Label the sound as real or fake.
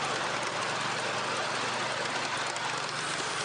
real